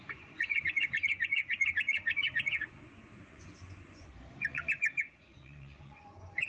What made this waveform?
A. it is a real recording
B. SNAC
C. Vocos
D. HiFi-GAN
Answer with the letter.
C